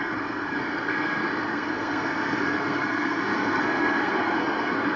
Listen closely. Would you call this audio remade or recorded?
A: remade